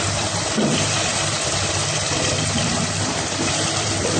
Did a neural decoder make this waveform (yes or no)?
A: yes